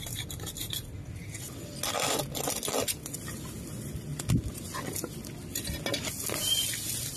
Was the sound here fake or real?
real